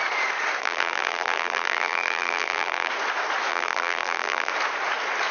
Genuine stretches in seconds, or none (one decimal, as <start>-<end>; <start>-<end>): 0.0-0.6; 2.9-3.5; 4.5-5.3